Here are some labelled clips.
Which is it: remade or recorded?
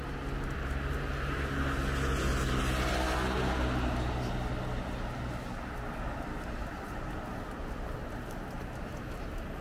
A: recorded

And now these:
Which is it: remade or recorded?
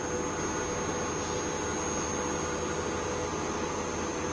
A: recorded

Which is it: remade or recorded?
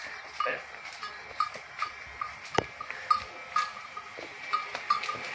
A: recorded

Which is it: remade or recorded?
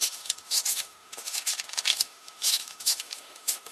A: remade